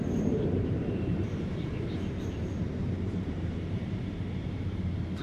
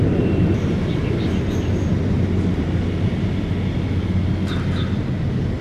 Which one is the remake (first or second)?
first